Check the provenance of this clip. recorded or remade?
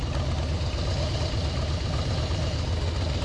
recorded